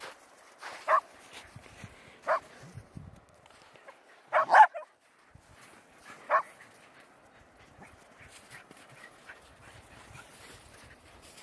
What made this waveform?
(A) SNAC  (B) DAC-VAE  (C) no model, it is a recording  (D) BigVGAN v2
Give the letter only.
C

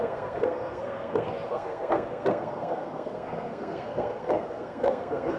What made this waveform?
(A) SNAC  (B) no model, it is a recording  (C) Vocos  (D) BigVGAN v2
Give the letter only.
A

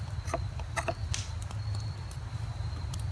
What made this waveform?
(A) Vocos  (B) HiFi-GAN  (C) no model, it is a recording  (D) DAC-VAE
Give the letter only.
C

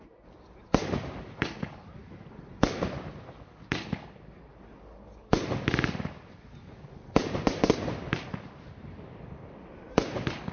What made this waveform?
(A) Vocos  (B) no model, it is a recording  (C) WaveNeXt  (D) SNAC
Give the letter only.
B